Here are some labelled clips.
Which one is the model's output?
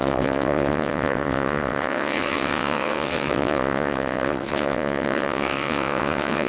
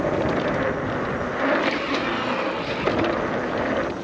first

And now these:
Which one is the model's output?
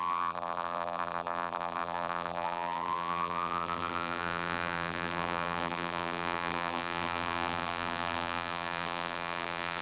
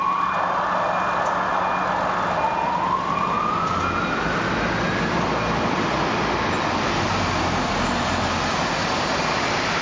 first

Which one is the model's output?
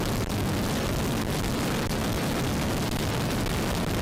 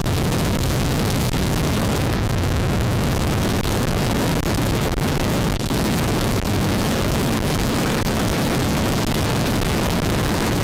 second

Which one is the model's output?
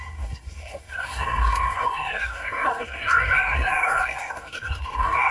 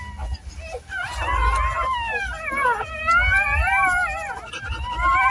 first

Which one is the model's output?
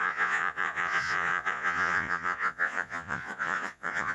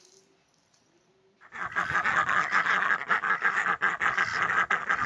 first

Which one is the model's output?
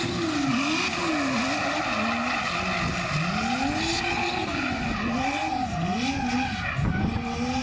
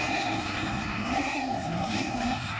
second